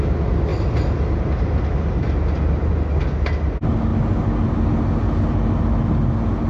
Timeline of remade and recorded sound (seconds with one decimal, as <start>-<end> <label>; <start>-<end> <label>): 0.0-6.5 recorded